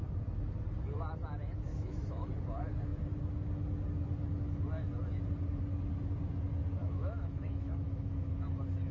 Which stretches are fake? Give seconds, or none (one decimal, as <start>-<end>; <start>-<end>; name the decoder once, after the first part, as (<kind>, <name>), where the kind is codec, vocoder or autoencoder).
1.7-2.3 (autoencoder, DAC-VAE); 6.8-8.3